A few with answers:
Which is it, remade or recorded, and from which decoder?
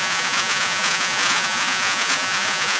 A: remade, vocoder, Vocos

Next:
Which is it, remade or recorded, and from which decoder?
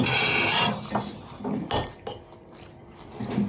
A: recorded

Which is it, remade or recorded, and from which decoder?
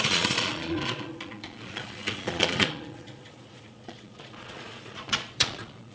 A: remade, vocoder, Vocos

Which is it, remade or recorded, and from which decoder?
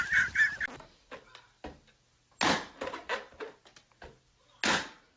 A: recorded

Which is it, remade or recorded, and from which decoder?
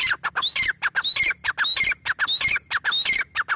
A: recorded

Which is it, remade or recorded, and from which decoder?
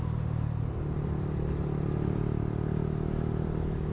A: recorded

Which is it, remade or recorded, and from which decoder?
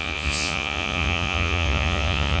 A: remade, vocoder, Vocos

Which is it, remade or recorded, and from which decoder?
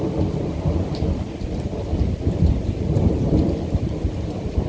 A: recorded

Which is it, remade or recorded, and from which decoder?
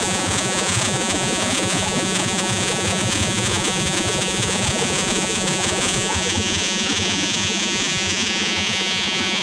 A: remade, vocoder, Vocos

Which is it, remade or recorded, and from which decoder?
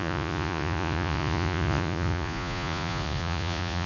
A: remade, vocoder, Vocos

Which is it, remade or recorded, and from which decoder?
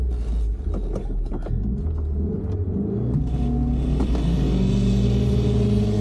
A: recorded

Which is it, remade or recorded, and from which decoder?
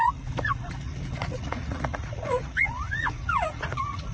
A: remade, vocoder, Vocos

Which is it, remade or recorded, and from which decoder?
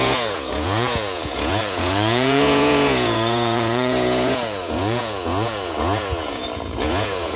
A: remade, vocoder, Vocos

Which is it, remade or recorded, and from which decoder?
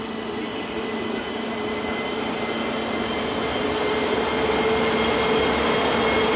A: recorded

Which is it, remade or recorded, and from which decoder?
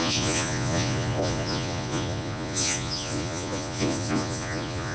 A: remade, vocoder, Vocos